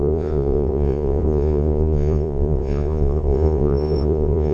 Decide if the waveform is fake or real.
fake